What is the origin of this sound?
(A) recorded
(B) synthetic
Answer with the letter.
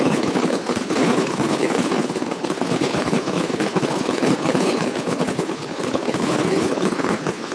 B